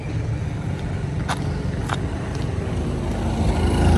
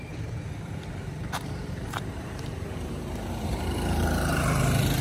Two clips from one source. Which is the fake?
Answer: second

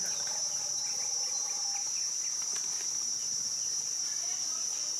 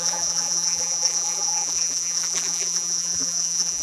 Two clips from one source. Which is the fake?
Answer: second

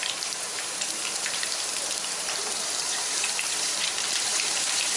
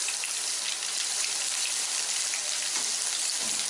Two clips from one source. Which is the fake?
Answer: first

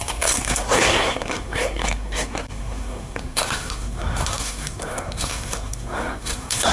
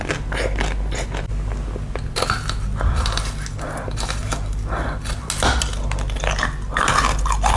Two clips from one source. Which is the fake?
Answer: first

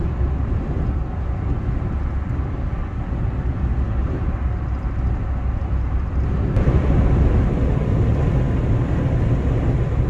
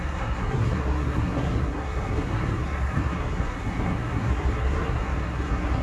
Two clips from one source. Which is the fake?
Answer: second